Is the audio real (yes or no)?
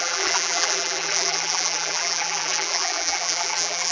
no